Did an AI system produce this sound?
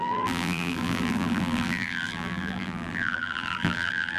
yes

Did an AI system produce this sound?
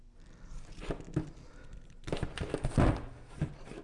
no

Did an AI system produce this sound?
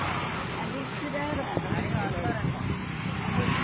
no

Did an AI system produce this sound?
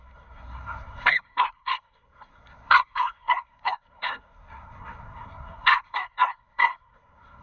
yes